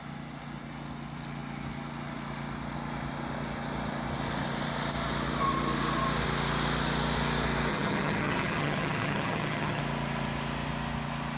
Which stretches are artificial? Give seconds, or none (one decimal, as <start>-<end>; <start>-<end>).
7.7-9.8